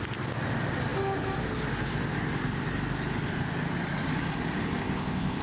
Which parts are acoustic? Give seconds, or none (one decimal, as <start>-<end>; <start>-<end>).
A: 0.0-4.8